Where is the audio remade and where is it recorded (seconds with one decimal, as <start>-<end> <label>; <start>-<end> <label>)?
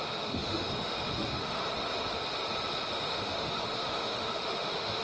0.0-1.6 remade; 1.6-2.9 recorded; 2.9-5.0 remade